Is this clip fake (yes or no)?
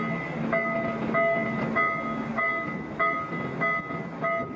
no